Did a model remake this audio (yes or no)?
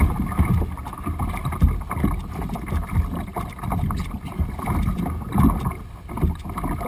no